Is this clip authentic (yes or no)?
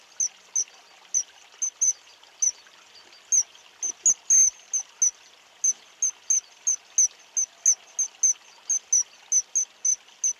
yes